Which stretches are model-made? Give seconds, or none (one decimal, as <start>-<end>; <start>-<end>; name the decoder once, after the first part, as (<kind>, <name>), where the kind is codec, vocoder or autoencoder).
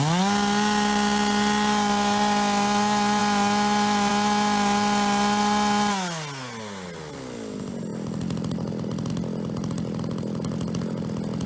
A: none